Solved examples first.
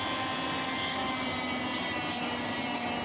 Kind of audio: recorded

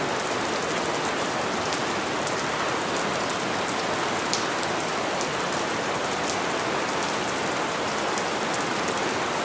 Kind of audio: recorded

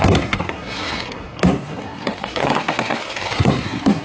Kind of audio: remade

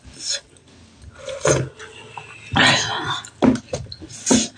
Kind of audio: recorded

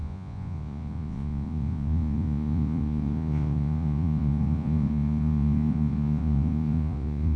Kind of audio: remade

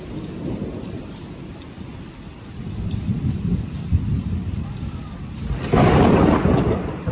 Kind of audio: remade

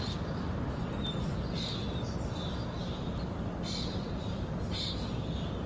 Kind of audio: recorded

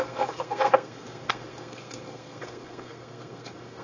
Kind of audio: remade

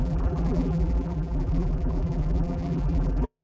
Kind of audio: remade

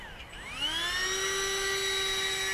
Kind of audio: recorded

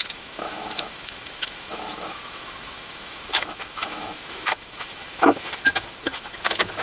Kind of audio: remade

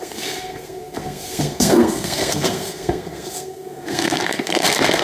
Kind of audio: remade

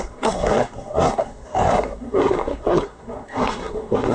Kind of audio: remade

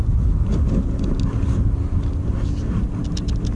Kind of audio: recorded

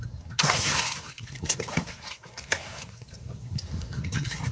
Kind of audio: remade